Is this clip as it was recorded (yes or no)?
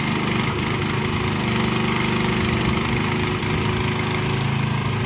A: yes